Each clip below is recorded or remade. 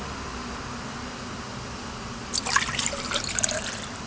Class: recorded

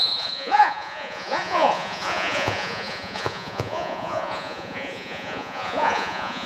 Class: remade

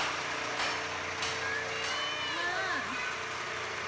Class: recorded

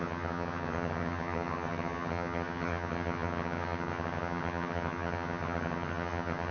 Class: remade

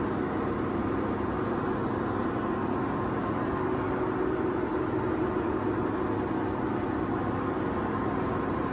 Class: recorded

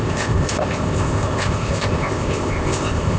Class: remade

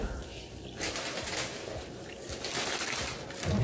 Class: recorded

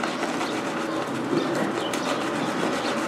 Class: recorded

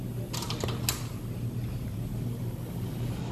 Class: recorded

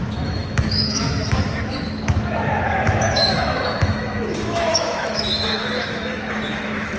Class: remade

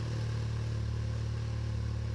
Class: recorded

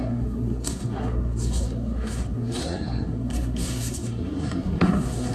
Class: remade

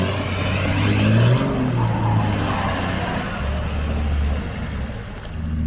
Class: recorded